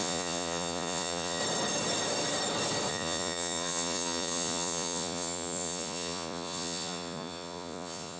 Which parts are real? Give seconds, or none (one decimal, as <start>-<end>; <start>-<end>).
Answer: 1.4-2.9